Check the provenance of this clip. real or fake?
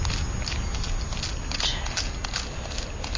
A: real